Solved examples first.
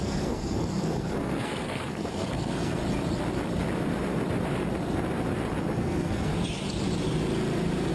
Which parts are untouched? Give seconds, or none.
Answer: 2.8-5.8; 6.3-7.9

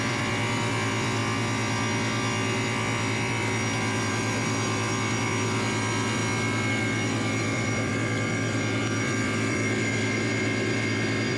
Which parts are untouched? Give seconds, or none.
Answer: 1.2-4.1; 6.2-6.7; 7.9-8.8

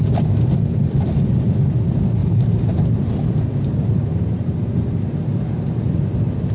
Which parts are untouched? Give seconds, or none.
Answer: 0.0-2.2; 4.5-6.5